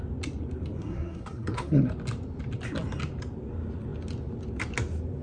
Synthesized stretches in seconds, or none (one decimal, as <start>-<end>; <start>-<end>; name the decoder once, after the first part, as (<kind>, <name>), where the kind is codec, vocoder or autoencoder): 0.8-1.9 (codec, SNAC)